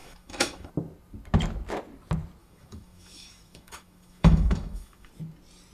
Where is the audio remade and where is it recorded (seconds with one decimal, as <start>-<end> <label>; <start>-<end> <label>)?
0.0-0.7 remade; 0.7-2.4 recorded; 2.4-5.1 remade; 5.1-5.7 recorded